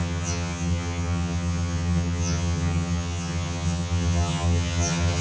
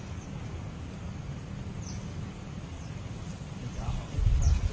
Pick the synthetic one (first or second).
first